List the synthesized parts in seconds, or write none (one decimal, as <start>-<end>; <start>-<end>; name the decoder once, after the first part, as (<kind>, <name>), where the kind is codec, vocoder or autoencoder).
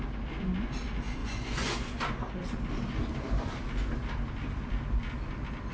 1.2-2.0 (vocoder, Vocos)